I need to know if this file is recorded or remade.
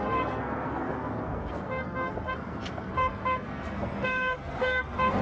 remade